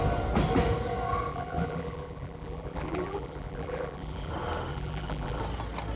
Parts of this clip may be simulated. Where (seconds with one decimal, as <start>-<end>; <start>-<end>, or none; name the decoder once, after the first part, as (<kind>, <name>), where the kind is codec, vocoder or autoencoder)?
1.3-4.3 (vocoder, BigVGAN v2); 4.7-5.4